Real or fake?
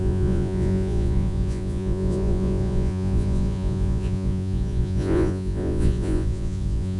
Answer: fake